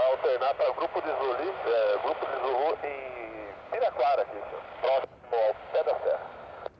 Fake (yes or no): no